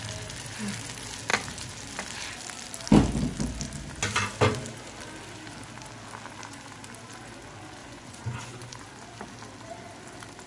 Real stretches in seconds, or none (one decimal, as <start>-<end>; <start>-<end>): 0.0-7.8; 8.8-10.5